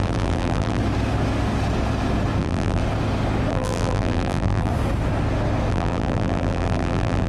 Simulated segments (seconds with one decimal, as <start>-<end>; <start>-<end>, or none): 0.0-0.8; 2.4-2.8; 3.5-4.7; 5.7-7.3